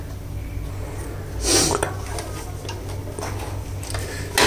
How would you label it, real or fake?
real